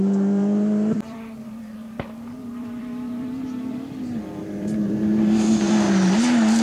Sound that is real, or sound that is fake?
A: fake